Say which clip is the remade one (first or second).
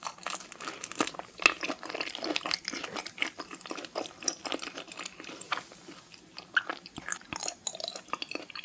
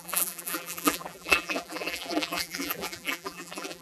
second